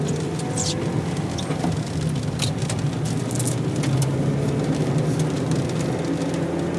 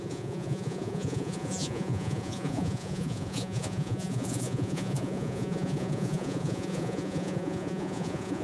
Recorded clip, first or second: first